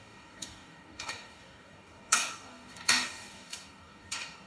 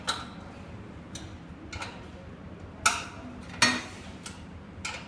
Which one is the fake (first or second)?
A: first